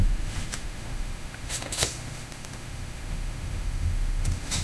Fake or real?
fake